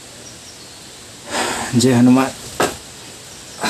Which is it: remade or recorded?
recorded